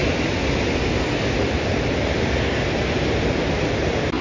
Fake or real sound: real